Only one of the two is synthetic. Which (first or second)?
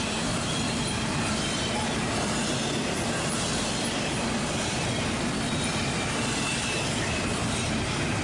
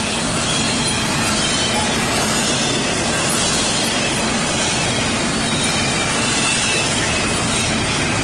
first